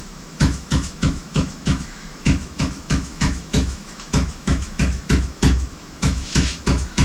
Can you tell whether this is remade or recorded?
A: remade